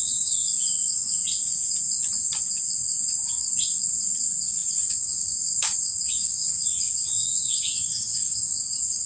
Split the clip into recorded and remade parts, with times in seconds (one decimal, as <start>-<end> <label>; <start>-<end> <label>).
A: 0.0-1.2 remade; 1.2-3.3 recorded; 3.3-9.1 remade